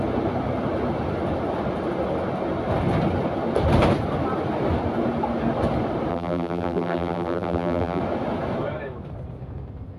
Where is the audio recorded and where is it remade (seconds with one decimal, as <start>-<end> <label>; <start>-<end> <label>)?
0.0-6.1 recorded; 6.1-8.0 remade; 8.0-10.0 recorded